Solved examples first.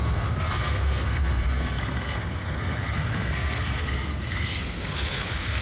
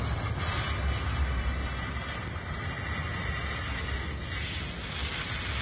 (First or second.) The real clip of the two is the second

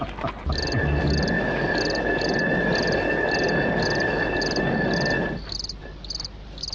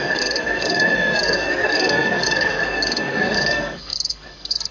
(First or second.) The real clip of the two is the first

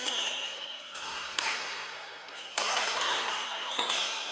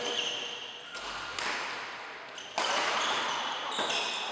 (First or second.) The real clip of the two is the second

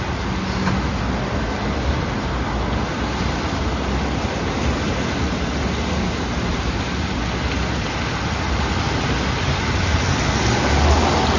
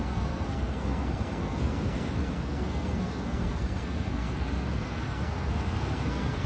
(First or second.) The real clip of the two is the first